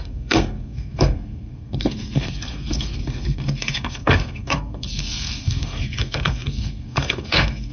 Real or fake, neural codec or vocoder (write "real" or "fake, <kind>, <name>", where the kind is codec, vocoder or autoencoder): fake, codec, SNAC